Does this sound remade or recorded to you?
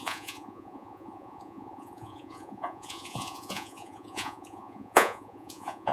remade